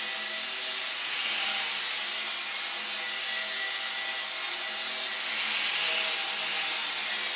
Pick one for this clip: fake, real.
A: real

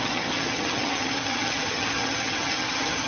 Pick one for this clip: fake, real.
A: fake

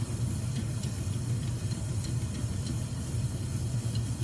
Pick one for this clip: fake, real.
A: real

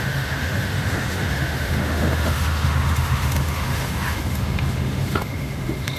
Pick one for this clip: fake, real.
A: fake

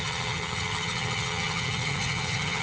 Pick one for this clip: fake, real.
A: fake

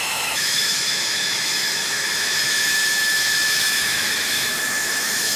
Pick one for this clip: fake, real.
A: fake